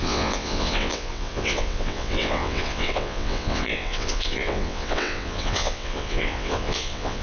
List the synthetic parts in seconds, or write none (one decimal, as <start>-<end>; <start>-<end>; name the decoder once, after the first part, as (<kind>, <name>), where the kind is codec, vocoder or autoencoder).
0.0-7.2 (vocoder, WaveNeXt)

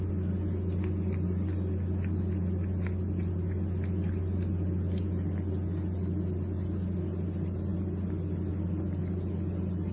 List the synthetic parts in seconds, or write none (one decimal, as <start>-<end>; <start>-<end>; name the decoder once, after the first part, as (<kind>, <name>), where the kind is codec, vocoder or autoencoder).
none

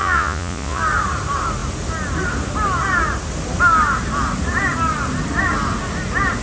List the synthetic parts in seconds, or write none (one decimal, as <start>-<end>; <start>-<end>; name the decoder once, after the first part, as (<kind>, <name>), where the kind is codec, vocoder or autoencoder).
0.0-0.8 (vocoder, Vocos)

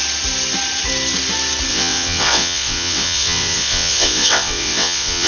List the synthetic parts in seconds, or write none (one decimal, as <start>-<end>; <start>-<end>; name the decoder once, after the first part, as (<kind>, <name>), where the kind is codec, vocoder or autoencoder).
1.7-5.3 (vocoder, WaveNeXt)